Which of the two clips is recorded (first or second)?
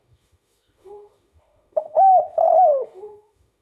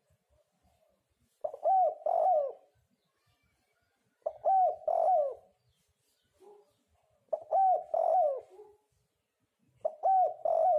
second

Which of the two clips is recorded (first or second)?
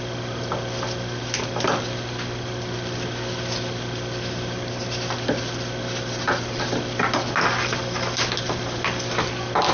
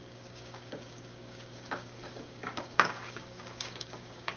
first